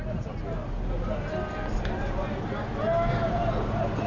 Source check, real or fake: real